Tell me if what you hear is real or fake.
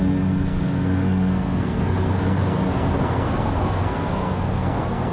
fake